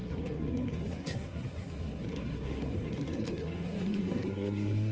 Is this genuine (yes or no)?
no